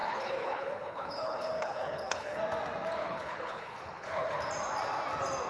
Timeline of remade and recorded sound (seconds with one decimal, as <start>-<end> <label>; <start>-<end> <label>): 0.0-2.4 remade; 2.4-3.0 recorded; 3.0-4.4 remade; 4.4-5.5 recorded